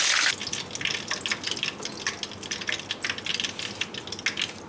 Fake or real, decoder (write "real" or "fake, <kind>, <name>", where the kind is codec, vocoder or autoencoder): real